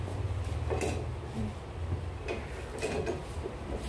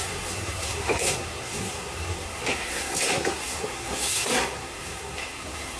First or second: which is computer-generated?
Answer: second